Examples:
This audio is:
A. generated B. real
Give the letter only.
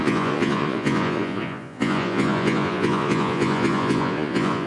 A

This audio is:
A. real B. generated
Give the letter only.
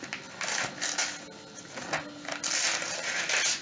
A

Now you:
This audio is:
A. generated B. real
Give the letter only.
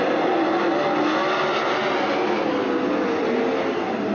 B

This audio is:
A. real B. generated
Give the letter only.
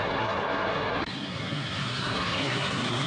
B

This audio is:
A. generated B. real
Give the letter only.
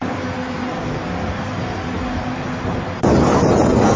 B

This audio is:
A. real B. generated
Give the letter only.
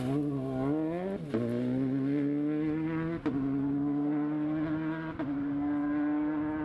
A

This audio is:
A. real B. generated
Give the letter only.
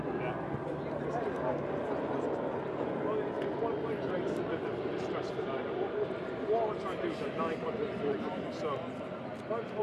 A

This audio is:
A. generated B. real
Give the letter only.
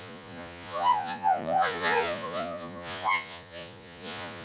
A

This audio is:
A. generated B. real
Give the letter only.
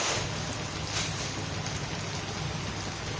B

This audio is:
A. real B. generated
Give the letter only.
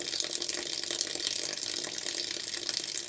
A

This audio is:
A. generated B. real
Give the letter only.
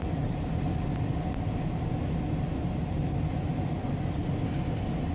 B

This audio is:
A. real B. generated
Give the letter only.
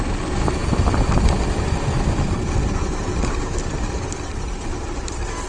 A